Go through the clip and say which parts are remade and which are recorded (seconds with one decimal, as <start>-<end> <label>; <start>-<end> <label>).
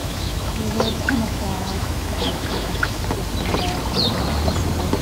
0.0-3.0 remade; 3.0-5.0 recorded